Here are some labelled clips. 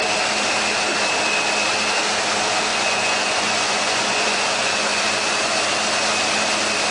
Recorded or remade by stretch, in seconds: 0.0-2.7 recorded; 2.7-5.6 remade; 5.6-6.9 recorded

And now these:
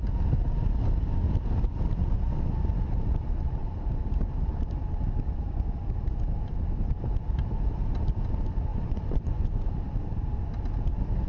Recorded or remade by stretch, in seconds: 0.0-8.7 recorded; 8.7-9.7 remade; 9.7-11.3 recorded

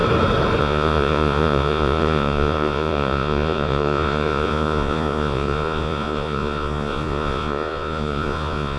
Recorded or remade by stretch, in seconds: 0.0-0.6 recorded; 0.6-8.8 remade

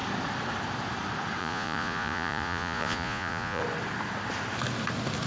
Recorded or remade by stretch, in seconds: 0.0-1.4 recorded; 1.4-3.6 remade; 3.6-5.3 recorded

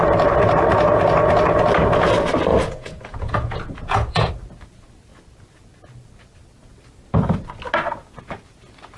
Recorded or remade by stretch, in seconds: 0.0-2.5 recorded; 2.5-4.3 remade; 4.3-9.0 recorded

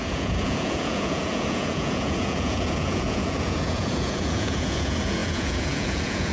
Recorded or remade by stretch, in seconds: 0.0-6.3 remade

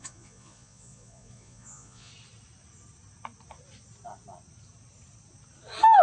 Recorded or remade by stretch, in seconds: 0.0-2.1 remade; 2.1-6.0 recorded